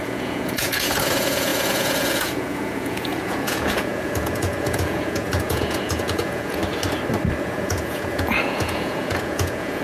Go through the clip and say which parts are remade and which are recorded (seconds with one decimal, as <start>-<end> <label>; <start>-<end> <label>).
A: 0.0-6.6 remade; 6.6-7.4 recorded; 7.4-9.8 remade